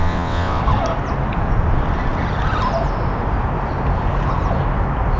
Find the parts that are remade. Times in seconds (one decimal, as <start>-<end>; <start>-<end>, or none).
0.0-0.6